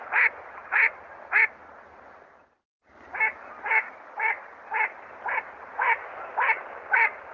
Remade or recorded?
recorded